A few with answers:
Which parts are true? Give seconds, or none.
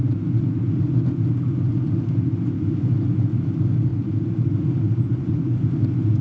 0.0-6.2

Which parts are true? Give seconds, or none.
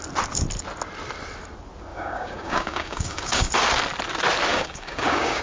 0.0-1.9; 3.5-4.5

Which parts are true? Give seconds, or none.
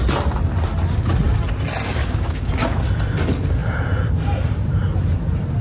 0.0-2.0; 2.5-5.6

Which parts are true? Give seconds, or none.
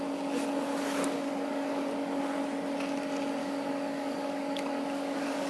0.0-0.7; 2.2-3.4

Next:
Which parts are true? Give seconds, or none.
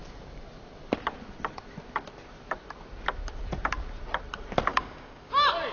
0.0-4.7; 5.3-5.7